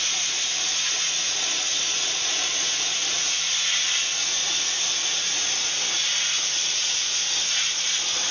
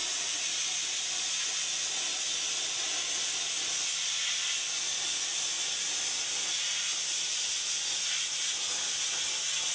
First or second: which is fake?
first